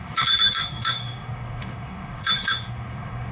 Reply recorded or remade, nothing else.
remade